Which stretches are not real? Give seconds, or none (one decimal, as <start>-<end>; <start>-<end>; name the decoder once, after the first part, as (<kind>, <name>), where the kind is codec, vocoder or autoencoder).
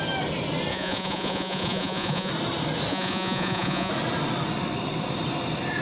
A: 0.7-2.3 (vocoder, Vocos); 2.9-3.9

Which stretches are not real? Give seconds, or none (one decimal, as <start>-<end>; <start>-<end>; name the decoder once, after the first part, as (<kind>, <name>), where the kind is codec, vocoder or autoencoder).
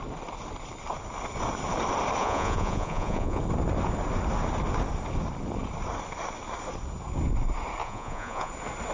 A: 2.2-3.4 (vocoder, Vocos); 7.8-8.5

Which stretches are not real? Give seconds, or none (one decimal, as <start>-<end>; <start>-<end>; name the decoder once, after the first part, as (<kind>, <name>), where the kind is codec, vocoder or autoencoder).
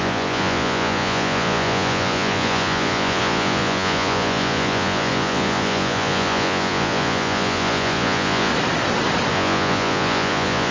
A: 0.0-8.5 (vocoder, Vocos); 9.3-10.7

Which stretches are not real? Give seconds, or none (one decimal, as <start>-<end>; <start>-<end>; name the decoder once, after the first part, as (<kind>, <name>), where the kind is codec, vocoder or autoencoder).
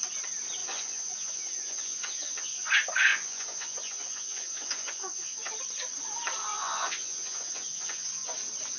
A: 0.6-2.7 (vocoder, Vocos); 3.1-5.5; 6.5-8.3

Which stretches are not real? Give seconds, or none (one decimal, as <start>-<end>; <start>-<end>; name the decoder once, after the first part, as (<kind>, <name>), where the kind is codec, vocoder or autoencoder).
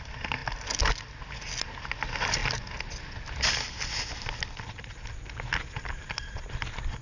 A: none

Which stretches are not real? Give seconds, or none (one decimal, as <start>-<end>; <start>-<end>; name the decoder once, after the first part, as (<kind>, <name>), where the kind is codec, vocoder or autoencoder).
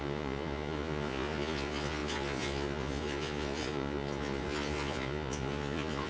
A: 0.0-6.1 (vocoder, Vocos)